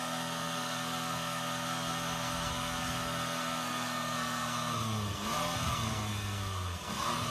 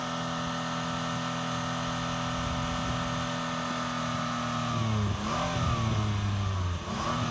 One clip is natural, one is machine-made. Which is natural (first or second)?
second